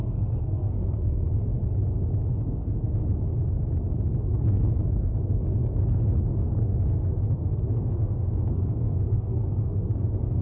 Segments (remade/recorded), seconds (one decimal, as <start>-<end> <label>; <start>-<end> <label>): 0.0-1.5 remade; 1.5-2.3 recorded; 2.3-3.0 remade; 3.0-4.2 recorded; 4.2-10.4 remade